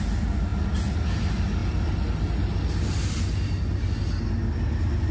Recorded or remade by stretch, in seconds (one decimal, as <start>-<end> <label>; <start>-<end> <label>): 0.0-5.1 recorded